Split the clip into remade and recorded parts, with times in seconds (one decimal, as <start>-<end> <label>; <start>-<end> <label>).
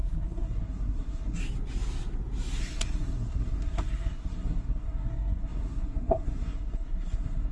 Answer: 0.0-1.4 remade; 1.4-2.6 recorded; 2.6-7.5 remade